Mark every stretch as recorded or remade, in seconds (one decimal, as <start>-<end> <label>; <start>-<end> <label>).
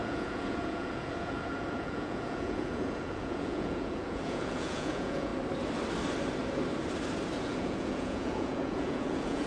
0.0-5.3 remade; 5.3-7.4 recorded; 7.4-9.5 remade